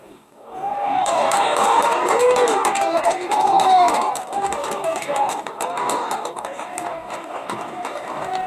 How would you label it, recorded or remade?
remade